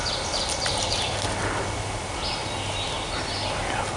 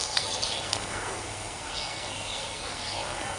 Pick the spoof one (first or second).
second